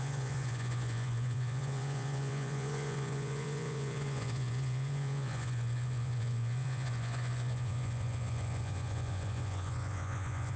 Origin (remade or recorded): remade